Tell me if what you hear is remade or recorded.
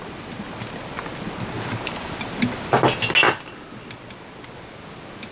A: recorded